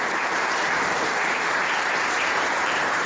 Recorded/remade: remade